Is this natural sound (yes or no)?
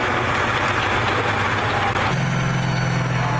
yes